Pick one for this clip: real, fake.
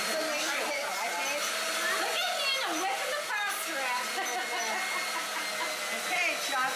real